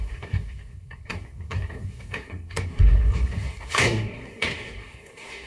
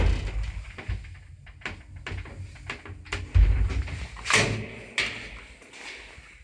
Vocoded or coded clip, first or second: first